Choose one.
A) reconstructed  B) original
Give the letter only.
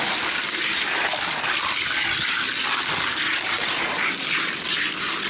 B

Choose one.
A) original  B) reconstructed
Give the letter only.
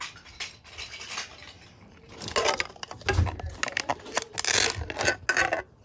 A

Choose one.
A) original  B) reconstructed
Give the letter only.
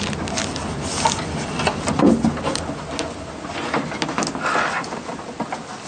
A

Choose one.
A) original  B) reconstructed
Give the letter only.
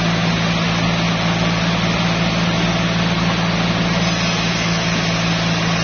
A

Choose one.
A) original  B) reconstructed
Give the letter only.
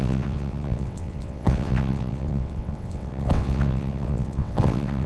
B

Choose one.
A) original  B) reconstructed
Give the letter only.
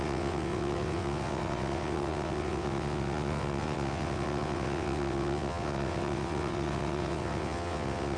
B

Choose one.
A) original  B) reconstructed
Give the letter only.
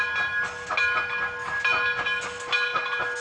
A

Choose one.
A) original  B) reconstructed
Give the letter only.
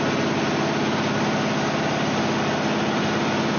A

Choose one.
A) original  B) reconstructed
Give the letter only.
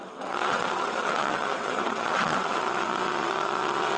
B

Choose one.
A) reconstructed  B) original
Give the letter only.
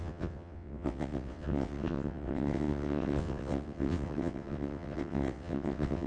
A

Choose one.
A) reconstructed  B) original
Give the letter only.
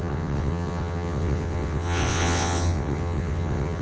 A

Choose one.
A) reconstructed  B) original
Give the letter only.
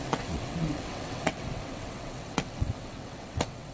A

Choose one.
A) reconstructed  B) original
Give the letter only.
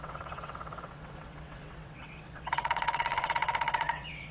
A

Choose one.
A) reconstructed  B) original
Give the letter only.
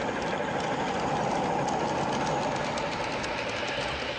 B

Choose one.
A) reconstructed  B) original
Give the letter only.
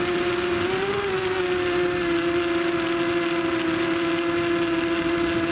B